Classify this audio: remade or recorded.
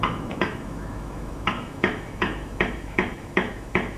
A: remade